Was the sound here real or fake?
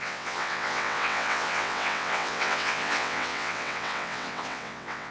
fake